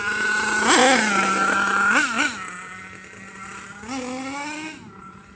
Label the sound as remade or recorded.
recorded